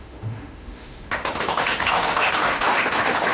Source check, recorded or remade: remade